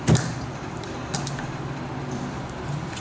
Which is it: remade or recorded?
recorded